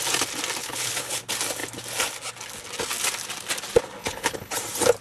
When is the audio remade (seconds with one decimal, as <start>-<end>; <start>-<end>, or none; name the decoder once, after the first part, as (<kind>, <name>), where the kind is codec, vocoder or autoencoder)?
0.6-1.2 (codec, HILCodec); 4.0-4.5